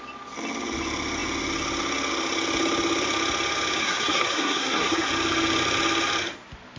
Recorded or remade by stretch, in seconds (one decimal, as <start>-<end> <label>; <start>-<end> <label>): 0.0-3.8 recorded; 3.8-5.1 remade; 5.1-6.8 recorded